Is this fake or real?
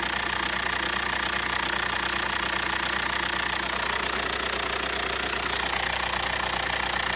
real